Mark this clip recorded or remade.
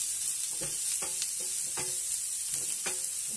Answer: recorded